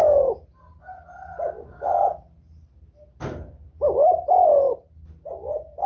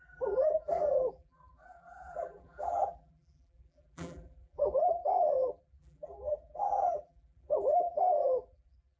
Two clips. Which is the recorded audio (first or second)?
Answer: first